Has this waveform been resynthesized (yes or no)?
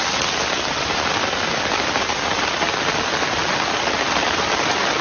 yes